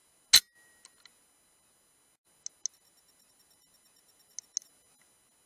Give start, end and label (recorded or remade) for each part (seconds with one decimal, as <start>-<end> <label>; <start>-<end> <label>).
0.0-5.5 recorded